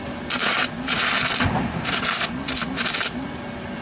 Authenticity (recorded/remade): recorded